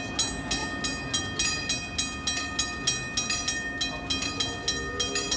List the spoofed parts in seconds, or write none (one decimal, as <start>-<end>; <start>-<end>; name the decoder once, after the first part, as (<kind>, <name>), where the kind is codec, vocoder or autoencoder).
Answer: none